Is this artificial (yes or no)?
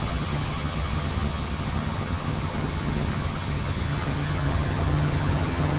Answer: yes